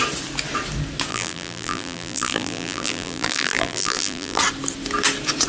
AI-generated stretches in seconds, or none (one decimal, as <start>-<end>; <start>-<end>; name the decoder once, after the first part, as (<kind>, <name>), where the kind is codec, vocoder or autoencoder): 1.1-4.4 (vocoder, BigVGAN v2)